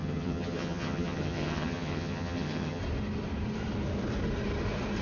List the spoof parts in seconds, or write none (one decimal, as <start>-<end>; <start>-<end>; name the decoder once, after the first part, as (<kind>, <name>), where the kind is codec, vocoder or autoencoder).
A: 0.0-2.8 (vocoder, HiFi-GAN)

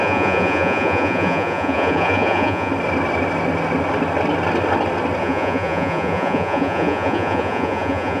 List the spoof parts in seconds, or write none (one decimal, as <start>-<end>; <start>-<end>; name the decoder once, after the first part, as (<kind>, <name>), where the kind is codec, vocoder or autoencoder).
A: 0.0-2.7 (vocoder, Vocos); 5.2-8.2